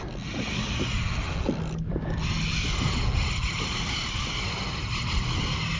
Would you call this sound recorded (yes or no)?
yes